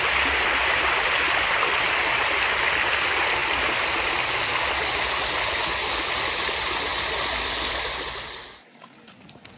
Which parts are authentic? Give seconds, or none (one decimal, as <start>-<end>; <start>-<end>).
0.0-9.6